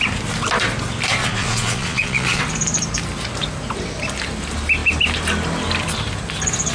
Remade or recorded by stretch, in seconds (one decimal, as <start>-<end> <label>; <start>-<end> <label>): 0.0-1.2 recorded; 1.2-2.4 remade; 2.4-6.7 recorded